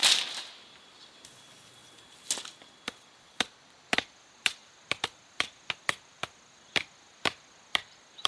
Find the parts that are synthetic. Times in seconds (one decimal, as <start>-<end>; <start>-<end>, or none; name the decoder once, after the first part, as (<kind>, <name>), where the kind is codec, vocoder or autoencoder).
0.0-1.8 (vocoder, BigVGAN v2); 2.4-8.3